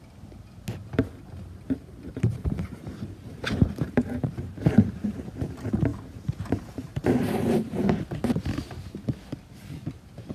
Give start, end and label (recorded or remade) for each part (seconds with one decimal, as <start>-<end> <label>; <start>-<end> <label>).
0.0-2.1 recorded; 2.1-5.2 remade; 5.2-5.9 recorded; 5.9-7.8 remade; 7.8-10.3 recorded